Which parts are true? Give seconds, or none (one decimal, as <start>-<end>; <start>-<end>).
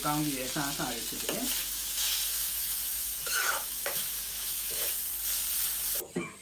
0.0-1.6; 5.1-6.4